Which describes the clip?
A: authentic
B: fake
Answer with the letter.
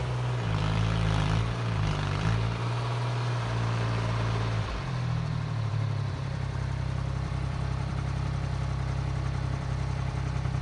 B